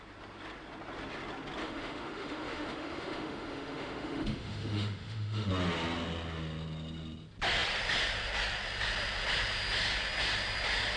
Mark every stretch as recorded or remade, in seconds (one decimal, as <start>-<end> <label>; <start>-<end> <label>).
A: 0.0-1.6 recorded; 1.6-5.5 remade; 5.5-11.0 recorded